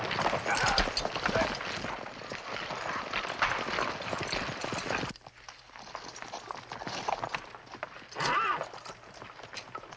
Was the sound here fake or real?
real